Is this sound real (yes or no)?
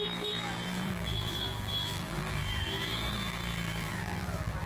no